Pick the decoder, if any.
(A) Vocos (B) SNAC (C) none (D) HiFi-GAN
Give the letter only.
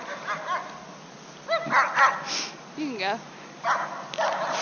C